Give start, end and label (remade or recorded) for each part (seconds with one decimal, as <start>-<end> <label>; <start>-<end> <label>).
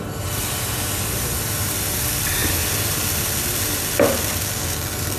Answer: 0.0-5.2 recorded